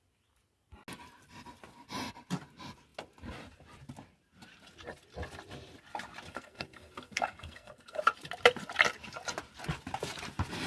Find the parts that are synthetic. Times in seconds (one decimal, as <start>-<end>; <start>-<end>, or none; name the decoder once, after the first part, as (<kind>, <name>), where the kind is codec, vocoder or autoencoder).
6.3-8.0 (codec, SNAC)